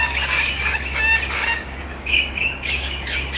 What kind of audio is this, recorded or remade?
remade